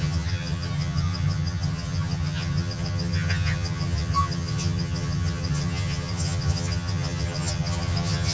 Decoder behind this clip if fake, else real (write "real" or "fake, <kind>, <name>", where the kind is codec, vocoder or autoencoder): fake, vocoder, HiFi-GAN